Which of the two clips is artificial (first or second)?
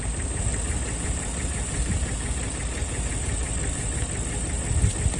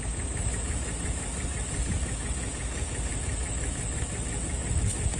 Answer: second